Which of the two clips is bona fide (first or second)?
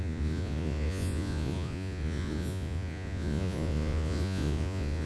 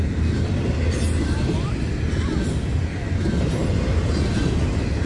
second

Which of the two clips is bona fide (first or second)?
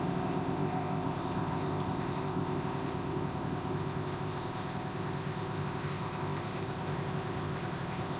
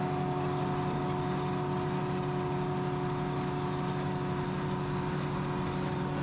second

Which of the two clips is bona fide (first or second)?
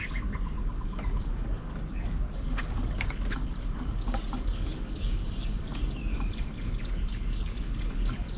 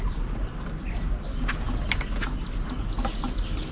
second